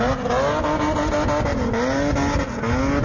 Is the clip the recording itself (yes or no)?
yes